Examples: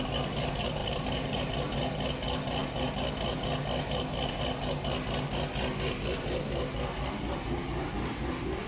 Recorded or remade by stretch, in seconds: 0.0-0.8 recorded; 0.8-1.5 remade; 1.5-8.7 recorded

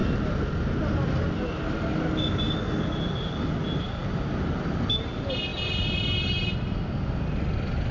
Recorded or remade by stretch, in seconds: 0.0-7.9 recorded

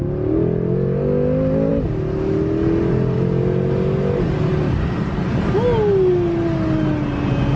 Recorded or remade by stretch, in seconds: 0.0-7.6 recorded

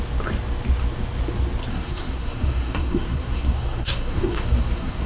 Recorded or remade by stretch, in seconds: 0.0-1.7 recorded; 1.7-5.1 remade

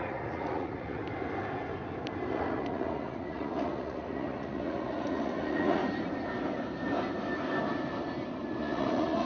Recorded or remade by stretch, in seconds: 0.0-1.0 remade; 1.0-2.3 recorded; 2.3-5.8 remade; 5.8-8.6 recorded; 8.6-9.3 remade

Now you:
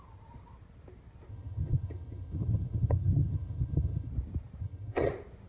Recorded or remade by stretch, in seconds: 0.0-1.3 recorded; 1.3-4.1 remade; 4.1-4.6 recorded; 4.6-5.1 remade; 5.1-5.5 recorded

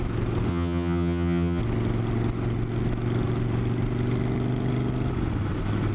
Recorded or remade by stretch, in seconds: 0.0-0.5 recorded; 0.5-1.6 remade; 1.6-5.9 recorded

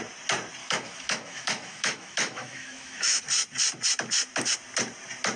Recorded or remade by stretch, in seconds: 0.0-0.6 recorded; 0.6-3.2 remade; 3.2-5.4 recorded